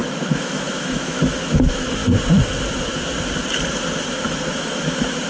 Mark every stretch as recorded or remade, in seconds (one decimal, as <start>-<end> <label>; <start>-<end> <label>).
0.0-2.0 remade; 2.0-4.5 recorded; 4.5-5.3 remade